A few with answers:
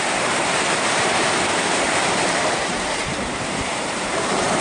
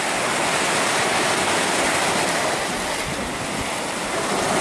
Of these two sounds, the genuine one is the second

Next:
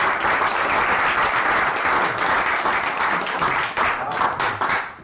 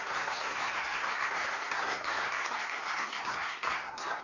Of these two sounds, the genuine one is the first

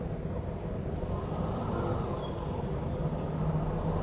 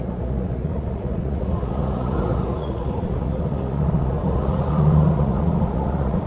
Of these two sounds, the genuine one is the first